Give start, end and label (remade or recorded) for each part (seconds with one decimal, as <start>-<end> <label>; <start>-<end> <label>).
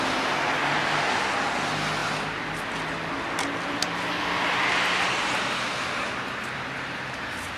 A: 0.0-7.6 recorded